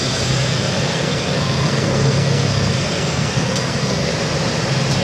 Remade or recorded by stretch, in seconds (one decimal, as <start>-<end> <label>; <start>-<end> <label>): 0.0-4.1 remade; 4.1-5.0 recorded